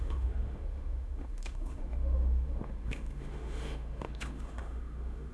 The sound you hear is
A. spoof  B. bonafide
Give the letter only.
A